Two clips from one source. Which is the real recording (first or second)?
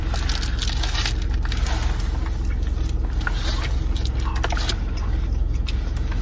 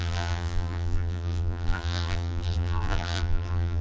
first